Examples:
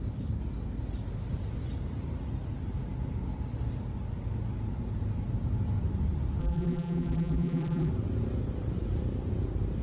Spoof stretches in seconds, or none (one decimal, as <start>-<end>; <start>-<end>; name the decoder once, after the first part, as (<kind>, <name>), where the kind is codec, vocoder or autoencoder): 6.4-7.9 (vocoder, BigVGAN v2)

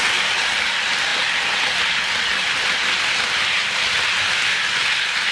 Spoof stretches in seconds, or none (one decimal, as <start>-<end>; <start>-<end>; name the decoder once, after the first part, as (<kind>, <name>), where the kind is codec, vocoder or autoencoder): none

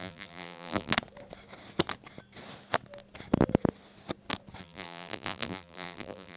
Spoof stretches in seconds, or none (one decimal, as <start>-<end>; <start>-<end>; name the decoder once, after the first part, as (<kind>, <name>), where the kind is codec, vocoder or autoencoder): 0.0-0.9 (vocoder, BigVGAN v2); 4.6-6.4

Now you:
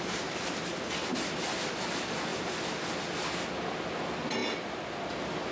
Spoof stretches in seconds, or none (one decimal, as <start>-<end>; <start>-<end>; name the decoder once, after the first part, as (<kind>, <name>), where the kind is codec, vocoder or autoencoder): none

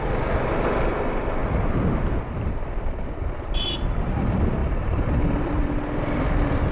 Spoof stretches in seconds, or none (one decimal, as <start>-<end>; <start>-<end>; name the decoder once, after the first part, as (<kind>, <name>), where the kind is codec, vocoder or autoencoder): 4.6-5.7 (vocoder, BigVGAN v2)

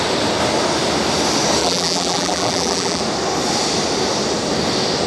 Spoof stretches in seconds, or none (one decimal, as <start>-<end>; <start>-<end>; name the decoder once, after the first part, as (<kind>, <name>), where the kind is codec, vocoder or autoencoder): 1.6-3.0 (vocoder, BigVGAN v2)

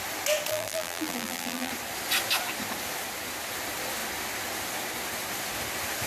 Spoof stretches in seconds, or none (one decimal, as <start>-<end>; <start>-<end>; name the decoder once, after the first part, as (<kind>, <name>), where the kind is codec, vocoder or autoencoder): 0.5-1.7 (vocoder, BigVGAN v2)